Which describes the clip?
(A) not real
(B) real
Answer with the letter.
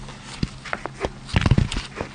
B